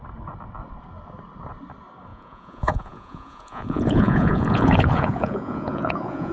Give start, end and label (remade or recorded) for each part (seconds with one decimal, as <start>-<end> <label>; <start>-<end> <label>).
0.0-2.1 recorded; 2.1-6.3 remade